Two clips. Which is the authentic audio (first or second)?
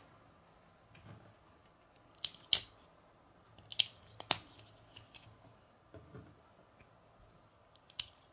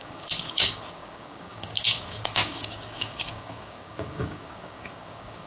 first